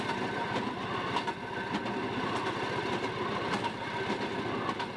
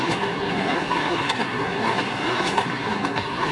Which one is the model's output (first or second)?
second